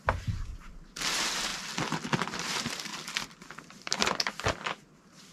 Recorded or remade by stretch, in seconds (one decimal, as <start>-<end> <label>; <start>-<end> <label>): 0.0-1.5 remade; 1.5-2.4 recorded; 2.4-2.9 remade; 2.9-3.6 recorded; 3.6-4.0 remade; 4.0-4.7 recorded; 4.7-5.3 remade